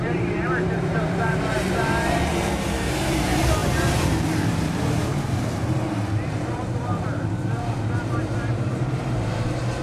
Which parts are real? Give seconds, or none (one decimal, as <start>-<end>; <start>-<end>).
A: none